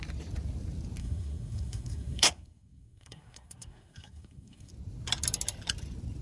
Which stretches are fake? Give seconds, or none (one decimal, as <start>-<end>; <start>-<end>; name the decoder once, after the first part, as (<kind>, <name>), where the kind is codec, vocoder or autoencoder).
1.0-4.7 (codec, SNAC)